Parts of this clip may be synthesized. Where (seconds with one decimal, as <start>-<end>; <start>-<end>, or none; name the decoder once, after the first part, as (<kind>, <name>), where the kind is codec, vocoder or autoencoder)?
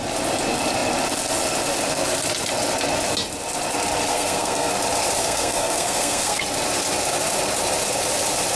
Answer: 4.1-4.7 (codec, SNAC); 5.2-6.4